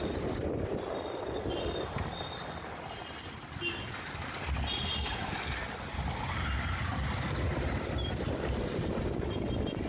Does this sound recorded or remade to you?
recorded